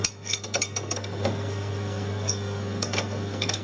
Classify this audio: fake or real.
fake